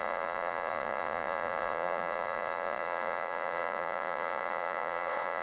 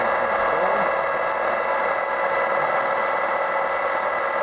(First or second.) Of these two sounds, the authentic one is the second